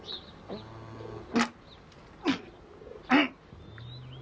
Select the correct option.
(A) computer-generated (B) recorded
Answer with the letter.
B